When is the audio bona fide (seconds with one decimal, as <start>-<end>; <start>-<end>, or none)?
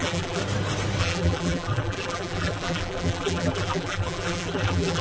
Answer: 0.4-1.0